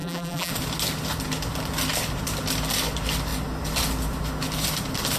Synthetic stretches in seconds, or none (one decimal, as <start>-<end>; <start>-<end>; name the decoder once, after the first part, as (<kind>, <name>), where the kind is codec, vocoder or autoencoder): 0.0-0.5 (vocoder, BigVGAN v2)